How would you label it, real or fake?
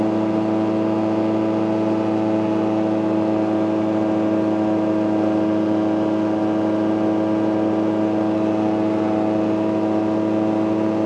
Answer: real